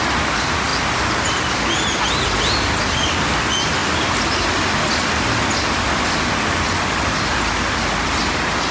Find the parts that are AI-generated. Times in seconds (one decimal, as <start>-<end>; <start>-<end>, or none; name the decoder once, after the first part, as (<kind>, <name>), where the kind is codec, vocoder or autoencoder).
none